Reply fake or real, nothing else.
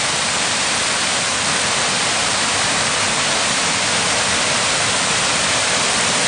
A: real